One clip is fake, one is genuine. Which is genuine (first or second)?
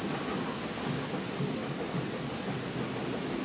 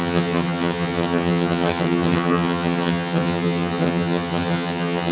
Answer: first